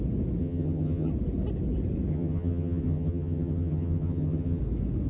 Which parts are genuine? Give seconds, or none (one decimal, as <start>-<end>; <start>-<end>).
0.0-0.4; 1.1-2.1; 4.6-5.1